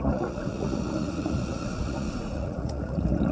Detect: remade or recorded remade